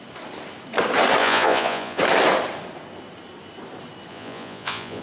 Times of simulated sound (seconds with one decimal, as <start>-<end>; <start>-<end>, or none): 1.2-2.0; 4.1-5.0